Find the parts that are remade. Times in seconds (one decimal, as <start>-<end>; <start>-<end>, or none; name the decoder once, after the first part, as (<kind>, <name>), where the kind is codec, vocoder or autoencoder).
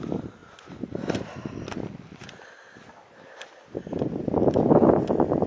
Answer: none